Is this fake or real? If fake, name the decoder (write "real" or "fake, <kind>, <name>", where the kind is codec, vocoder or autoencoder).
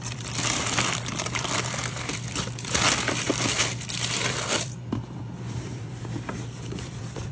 fake, vocoder, BigVGAN v2